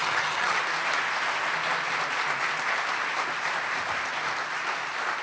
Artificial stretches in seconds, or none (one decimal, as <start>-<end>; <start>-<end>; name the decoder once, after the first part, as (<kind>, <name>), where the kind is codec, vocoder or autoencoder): 0.0-0.6 (vocoder, HiFi-GAN)